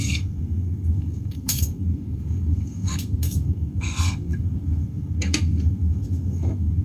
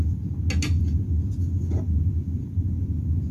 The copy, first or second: first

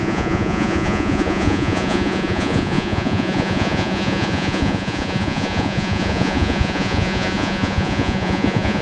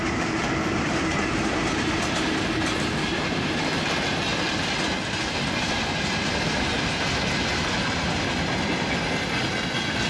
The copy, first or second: first